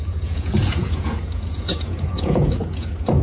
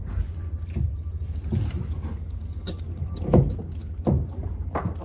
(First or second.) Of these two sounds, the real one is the second